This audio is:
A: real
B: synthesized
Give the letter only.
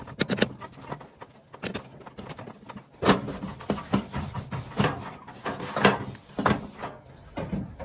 A